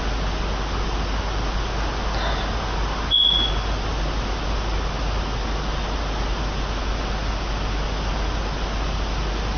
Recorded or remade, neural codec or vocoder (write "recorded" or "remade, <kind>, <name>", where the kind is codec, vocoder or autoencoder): recorded